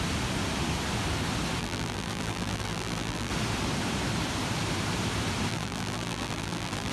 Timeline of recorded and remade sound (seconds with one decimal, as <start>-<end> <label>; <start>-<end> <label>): 0.0-1.6 recorded; 1.6-3.3 remade; 3.3-5.5 recorded; 5.5-6.9 remade